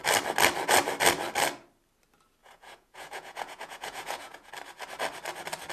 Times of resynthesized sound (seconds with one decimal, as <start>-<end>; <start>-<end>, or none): 2.4-4.5